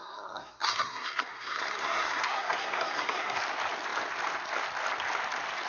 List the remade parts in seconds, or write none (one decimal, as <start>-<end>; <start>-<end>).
0.0-3.4